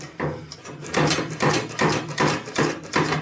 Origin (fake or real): fake